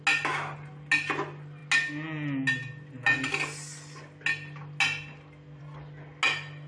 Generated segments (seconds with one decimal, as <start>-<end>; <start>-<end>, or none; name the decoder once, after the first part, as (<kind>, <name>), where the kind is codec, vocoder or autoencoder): none